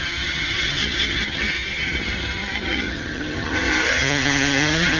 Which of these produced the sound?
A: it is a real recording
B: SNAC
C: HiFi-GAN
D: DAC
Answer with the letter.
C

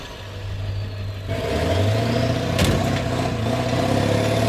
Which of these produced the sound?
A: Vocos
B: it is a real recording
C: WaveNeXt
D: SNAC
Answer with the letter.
B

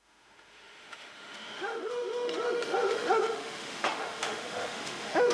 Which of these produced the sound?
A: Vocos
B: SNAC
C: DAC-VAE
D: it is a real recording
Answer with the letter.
C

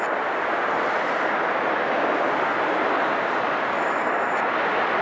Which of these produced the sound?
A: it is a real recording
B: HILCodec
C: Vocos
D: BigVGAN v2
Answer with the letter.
A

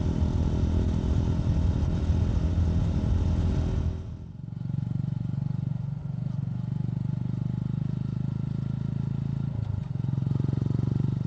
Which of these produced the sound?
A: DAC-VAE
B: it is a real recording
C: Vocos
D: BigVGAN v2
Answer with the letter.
B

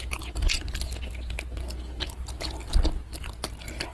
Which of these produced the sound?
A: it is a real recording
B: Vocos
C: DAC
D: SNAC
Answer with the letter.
A